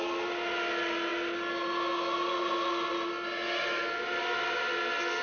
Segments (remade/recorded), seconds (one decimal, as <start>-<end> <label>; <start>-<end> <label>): 0.0-5.2 recorded

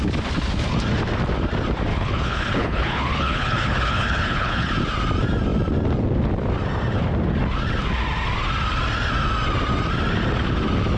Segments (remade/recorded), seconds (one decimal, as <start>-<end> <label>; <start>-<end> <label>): 0.0-1.9 recorded; 1.9-4.7 remade; 4.7-11.0 recorded

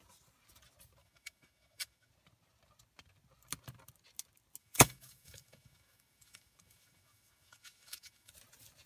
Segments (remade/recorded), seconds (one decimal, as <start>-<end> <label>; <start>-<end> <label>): 0.0-1.0 recorded; 1.0-2.1 remade; 2.1-4.6 recorded; 4.6-8.3 remade; 8.3-8.9 recorded